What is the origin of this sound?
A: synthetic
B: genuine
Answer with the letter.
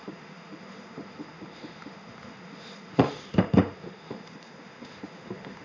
A